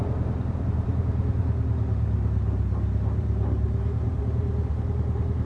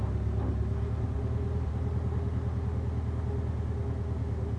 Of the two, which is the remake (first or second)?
first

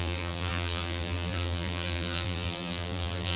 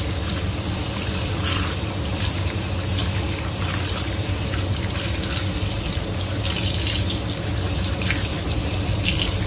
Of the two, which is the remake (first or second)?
first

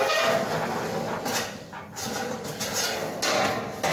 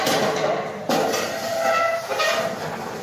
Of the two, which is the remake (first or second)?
second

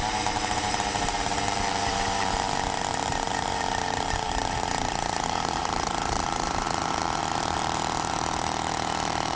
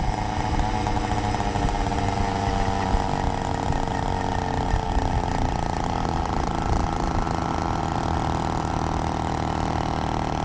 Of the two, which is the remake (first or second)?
first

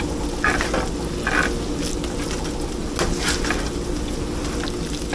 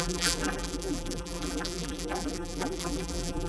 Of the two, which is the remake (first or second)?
second